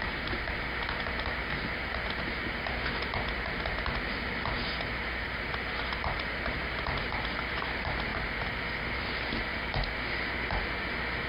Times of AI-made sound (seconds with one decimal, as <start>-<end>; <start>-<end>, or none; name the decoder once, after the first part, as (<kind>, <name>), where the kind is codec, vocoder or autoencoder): none